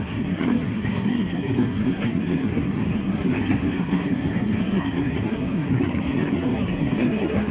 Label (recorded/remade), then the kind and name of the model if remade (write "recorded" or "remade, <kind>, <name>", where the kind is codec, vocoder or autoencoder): remade, codec, SNAC